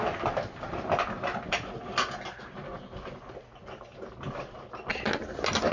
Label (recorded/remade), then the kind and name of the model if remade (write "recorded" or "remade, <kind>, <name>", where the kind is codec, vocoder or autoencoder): recorded